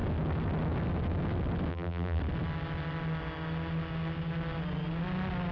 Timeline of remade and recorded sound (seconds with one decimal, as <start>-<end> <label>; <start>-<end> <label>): 0.0-1.7 recorded; 1.7-2.2 remade; 2.2-5.5 recorded